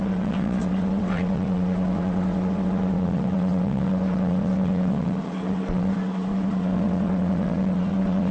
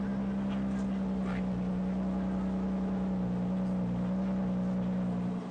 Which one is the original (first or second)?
second